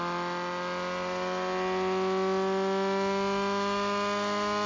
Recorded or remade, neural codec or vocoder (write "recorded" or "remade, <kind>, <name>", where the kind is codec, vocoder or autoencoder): recorded